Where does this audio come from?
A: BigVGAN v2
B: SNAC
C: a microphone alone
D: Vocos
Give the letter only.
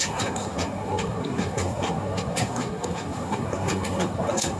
B